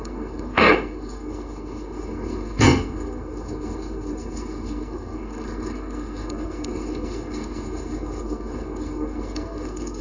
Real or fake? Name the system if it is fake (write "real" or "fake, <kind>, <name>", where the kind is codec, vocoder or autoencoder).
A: fake, codec, SNAC